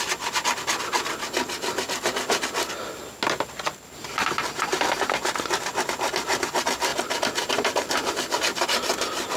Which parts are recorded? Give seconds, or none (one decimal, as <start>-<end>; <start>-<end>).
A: 0.0-4.7; 5.5-6.9; 8.1-9.4

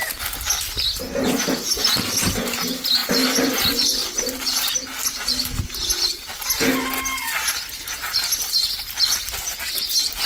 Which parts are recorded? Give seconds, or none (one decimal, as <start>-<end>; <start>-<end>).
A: 0.0-3.0; 3.6-7.2; 9.4-10.3

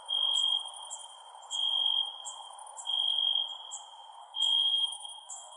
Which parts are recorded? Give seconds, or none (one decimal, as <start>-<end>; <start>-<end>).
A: 0.0-4.2

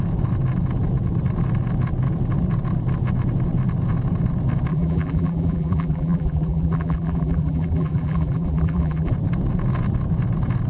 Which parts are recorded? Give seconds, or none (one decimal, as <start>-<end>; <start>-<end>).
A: 0.0-4.7; 9.1-10.7

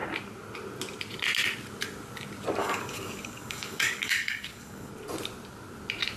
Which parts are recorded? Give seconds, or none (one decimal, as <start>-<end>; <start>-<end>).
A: 0.0-2.6; 4.9-6.2

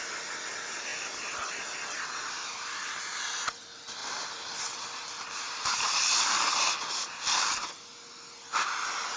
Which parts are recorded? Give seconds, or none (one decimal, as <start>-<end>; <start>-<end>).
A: 0.0-4.0; 6.5-9.2